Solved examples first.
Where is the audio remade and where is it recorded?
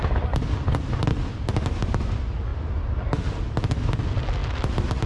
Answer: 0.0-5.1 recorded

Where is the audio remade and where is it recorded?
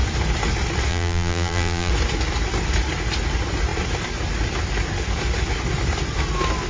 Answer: 0.0-0.9 recorded; 0.9-1.9 remade; 1.9-6.7 recorded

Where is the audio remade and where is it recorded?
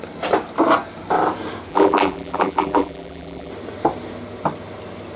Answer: 0.0-1.7 recorded; 1.7-3.5 remade; 3.5-5.2 recorded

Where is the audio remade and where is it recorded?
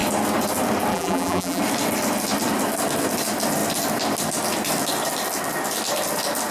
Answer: 0.0-0.9 recorded; 0.9-1.6 remade; 1.6-6.5 recorded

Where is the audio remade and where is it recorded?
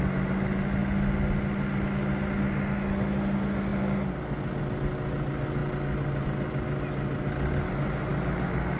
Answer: 0.0-8.8 recorded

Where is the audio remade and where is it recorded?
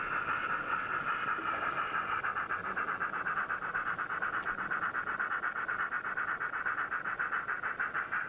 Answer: 0.0-2.6 recorded; 2.6-4.0 remade; 4.0-8.3 recorded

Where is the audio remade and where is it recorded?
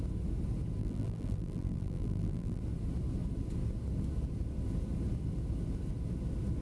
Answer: 0.0-0.8 recorded; 0.8-2.6 remade; 2.6-6.6 recorded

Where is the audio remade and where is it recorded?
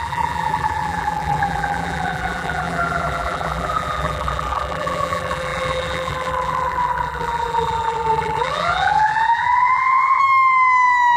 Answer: 0.0-10.2 remade; 10.2-11.2 recorded